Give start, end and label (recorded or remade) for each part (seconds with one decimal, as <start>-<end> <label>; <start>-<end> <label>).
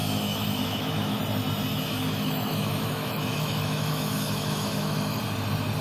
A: 0.0-1.2 remade; 1.2-1.7 recorded; 1.7-5.2 remade; 5.2-5.8 recorded